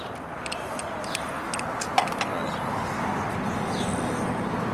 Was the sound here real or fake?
real